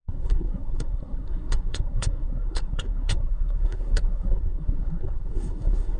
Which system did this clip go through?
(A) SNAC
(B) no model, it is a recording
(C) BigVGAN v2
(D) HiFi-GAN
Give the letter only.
A